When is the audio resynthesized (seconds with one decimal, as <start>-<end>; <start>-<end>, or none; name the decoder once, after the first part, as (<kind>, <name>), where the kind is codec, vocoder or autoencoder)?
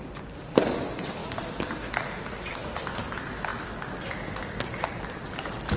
none